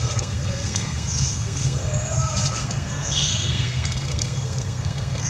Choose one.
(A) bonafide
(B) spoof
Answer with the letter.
B